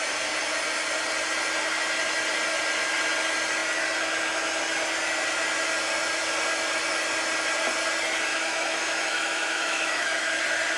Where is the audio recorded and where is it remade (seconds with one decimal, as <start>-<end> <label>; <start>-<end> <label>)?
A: 0.0-8.3 recorded; 8.3-10.4 remade; 10.4-10.8 recorded